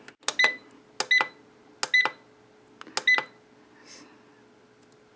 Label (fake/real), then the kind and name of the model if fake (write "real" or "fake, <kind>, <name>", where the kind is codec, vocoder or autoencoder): real